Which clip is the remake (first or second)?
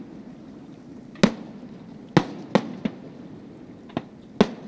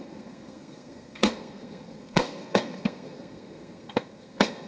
second